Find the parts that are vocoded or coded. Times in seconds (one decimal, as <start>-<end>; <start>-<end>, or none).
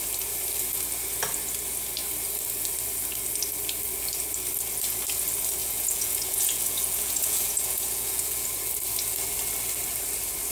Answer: 5.6-8.5